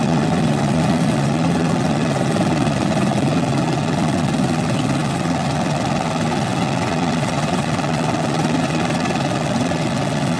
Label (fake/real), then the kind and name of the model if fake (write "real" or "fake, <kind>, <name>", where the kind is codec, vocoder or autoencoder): fake, vocoder, WaveNeXt